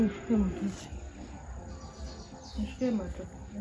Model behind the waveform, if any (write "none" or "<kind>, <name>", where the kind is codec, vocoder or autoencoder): none